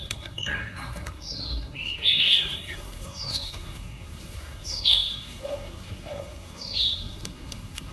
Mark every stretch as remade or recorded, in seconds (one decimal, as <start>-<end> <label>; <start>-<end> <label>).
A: 0.0-7.9 remade